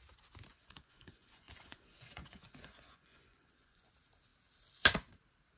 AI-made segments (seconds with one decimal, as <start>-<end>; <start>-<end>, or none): 0.5-3.9